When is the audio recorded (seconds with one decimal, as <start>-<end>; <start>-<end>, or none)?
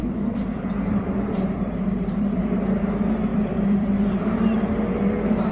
2.4-3.3; 4.1-5.5